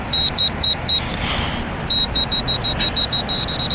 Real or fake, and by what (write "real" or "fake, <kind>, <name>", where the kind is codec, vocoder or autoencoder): fake, vocoder, BigVGAN v2